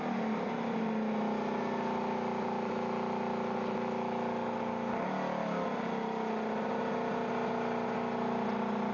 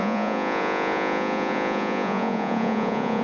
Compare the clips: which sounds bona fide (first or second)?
first